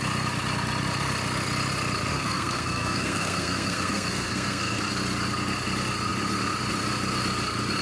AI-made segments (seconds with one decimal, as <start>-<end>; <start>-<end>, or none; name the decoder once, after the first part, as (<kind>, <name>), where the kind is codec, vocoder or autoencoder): 2.1-4.8 (codec, SNAC)